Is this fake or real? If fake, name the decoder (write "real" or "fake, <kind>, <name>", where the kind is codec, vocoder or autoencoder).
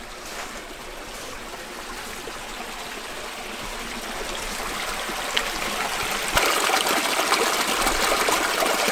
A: real